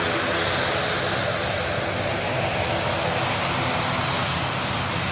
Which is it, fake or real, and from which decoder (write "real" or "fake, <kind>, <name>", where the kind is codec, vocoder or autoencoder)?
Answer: real